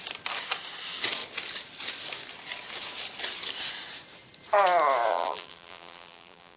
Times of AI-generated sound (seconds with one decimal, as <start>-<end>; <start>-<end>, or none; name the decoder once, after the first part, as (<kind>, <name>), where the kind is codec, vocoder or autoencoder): 5.1-6.6 (vocoder, BigVGAN v2)